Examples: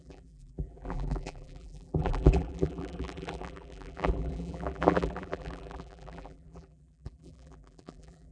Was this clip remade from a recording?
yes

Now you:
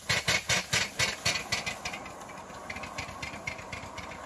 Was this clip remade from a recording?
no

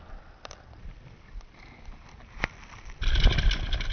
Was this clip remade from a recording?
no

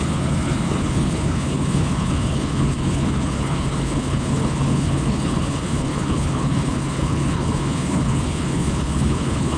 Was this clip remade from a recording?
yes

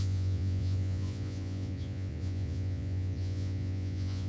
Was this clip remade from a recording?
yes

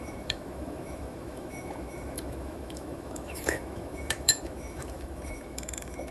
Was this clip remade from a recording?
yes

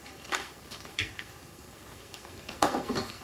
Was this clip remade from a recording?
yes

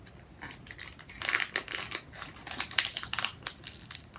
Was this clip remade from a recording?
no